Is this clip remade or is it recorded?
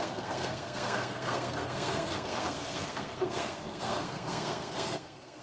remade